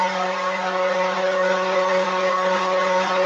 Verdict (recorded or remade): remade